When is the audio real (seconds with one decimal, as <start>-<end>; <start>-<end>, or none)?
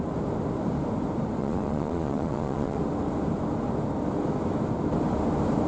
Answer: 0.0-1.4; 2.8-5.7